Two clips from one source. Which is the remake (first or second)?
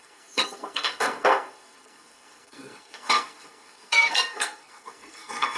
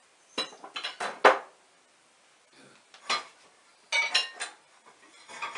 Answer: first